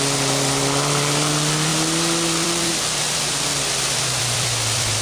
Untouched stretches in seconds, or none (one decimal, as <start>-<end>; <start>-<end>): none